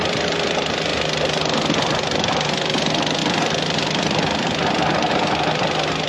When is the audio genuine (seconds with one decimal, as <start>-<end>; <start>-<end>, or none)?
0.0-6.1